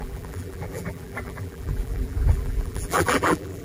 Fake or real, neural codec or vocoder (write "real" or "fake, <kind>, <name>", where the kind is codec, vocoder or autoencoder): fake, vocoder, BigVGAN v2